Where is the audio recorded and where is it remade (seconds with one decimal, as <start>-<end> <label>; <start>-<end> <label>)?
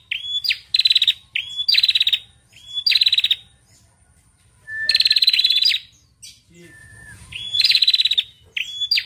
0.0-6.8 recorded; 6.8-7.8 remade; 7.8-9.1 recorded